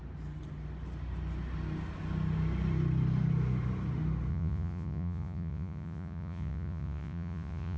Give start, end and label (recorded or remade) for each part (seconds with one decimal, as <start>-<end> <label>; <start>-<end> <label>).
0.0-4.3 recorded; 4.3-7.8 remade